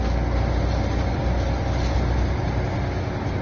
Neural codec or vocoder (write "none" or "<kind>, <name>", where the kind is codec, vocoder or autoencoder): none